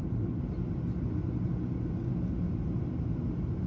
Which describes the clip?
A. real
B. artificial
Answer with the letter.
A